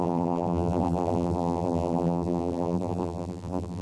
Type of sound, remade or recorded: remade